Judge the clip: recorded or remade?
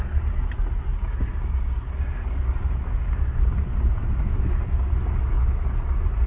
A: recorded